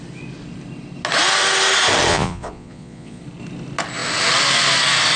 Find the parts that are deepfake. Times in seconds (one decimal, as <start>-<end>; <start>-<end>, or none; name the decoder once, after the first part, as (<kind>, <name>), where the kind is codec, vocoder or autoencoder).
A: 2.1-3.2 (vocoder, Vocos)